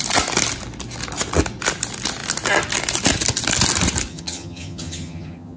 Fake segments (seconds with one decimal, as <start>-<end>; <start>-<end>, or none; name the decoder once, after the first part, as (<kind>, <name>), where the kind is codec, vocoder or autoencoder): 4.1-5.6 (vocoder, HiFi-GAN)